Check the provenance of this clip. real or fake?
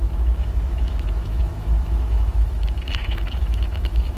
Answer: fake